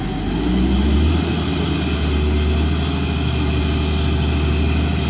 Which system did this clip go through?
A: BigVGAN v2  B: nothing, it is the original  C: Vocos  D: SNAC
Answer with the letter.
B